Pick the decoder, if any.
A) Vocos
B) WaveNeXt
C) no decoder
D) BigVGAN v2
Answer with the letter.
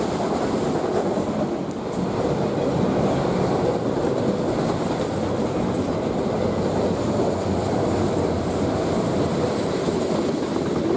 C